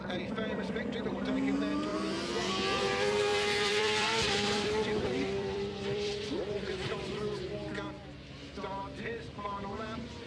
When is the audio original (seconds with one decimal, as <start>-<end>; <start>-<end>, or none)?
0.0-0.5; 1.1-1.9; 2.5-3.3; 7.5-10.3